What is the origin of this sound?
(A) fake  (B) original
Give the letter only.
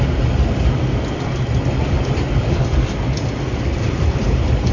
A